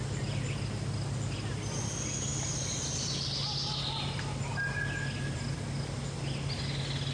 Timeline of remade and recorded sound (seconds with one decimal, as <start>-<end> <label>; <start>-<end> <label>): 0.0-7.1 recorded